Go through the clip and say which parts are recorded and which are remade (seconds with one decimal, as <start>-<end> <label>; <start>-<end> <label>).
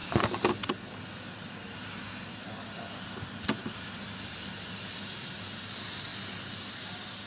0.0-7.3 recorded